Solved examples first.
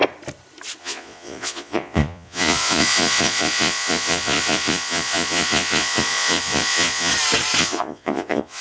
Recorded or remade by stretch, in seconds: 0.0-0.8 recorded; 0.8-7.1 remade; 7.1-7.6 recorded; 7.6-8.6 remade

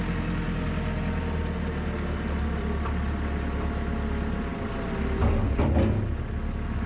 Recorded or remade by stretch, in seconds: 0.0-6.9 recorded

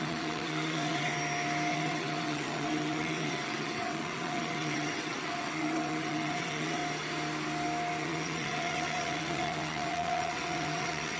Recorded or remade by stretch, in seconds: 0.0-1.1 remade; 1.1-1.7 recorded; 1.7-6.8 remade; 6.8-8.0 recorded; 8.0-11.2 remade

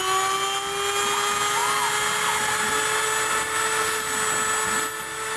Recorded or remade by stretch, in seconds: 0.0-5.4 recorded

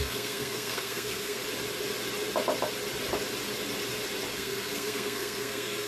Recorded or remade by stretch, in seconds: 0.0-1.4 remade; 1.4-4.3 recorded; 4.3-5.9 remade

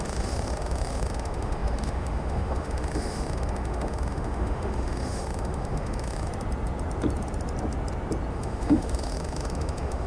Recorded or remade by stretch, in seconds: 0.0-6.3 remade; 6.3-8.3 recorded; 8.3-10.1 remade